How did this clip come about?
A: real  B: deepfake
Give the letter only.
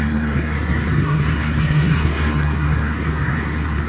B